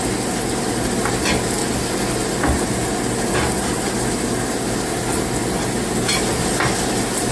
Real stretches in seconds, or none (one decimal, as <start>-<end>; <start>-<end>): 0.0-7.3